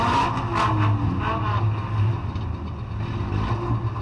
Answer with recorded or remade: recorded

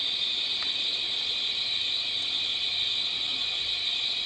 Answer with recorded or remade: recorded